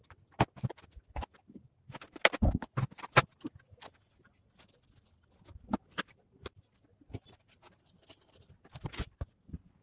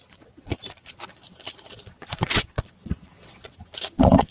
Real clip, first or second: first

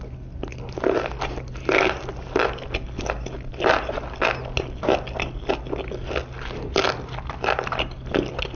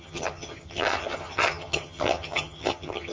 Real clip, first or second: first